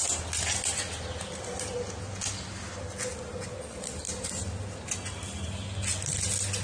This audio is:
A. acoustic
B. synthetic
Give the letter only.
A